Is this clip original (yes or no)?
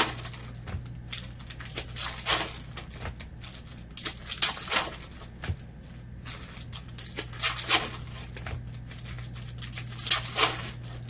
yes